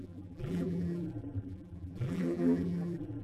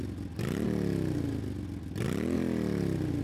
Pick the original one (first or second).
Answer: second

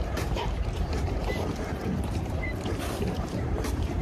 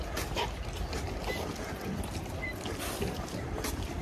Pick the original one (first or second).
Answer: second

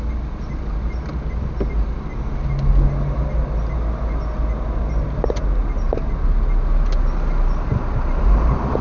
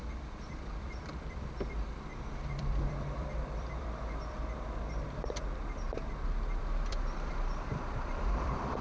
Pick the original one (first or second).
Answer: first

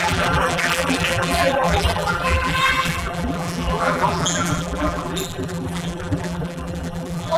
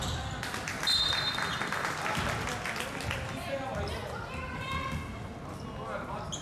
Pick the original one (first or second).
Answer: second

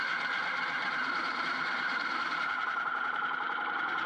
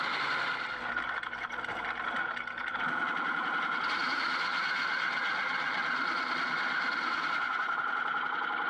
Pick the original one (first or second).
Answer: second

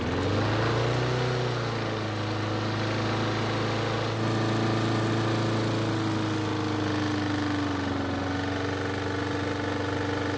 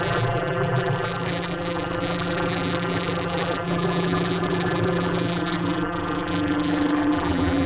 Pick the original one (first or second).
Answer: first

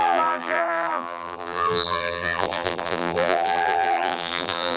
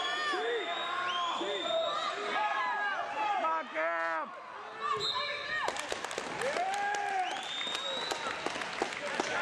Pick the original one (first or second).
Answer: second